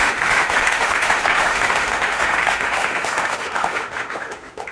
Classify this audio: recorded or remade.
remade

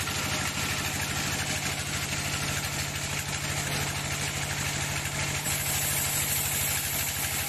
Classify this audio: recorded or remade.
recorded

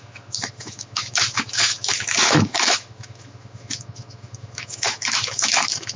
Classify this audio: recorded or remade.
remade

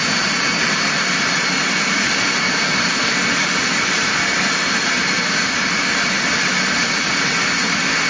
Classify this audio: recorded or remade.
recorded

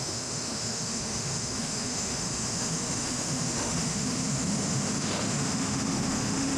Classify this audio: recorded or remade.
remade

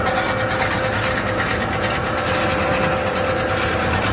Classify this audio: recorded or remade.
recorded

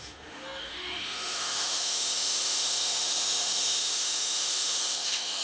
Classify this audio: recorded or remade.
remade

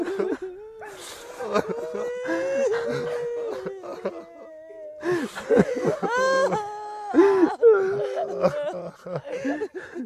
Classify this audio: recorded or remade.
recorded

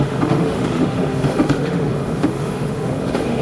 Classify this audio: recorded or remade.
remade